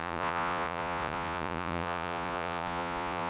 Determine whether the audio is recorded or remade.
remade